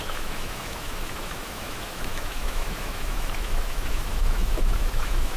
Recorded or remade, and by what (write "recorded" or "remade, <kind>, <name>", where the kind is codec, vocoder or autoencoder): remade, autoencoder, DAC-VAE